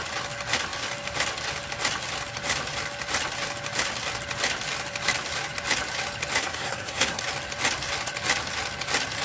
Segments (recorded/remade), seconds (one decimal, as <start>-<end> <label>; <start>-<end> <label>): 0.0-6.4 recorded; 6.4-7.2 remade; 7.2-9.2 recorded